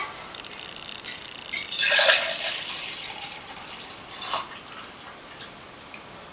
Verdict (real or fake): fake